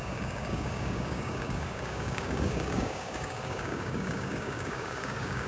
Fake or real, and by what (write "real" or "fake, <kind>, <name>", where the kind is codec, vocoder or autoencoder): fake, codec, DAC